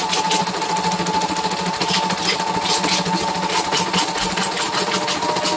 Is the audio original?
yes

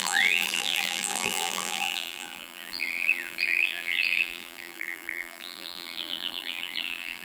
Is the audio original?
no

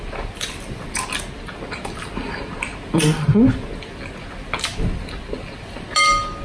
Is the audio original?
yes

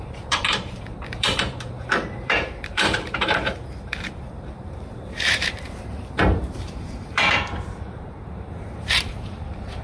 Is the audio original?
no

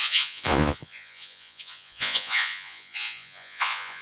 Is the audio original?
no